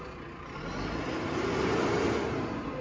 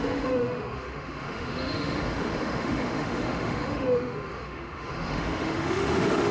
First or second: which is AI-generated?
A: second